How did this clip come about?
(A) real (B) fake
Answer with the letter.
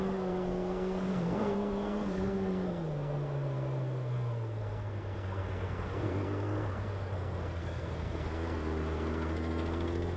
B